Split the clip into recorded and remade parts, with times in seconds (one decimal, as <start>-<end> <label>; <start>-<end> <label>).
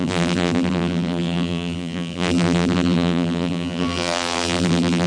0.0-5.1 remade